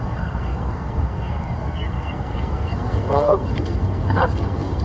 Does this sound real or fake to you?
fake